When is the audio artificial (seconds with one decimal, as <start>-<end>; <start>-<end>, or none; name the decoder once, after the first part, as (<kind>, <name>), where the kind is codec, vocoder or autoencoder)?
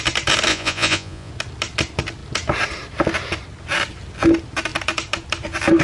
0.5-1.3 (vocoder, Vocos)